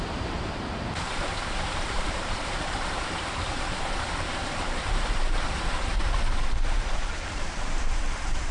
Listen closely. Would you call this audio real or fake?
fake